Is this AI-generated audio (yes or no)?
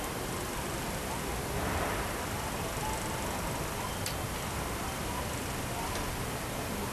no